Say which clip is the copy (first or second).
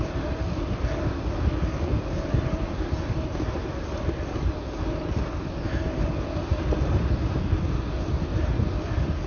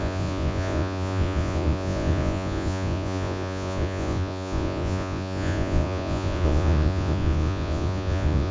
second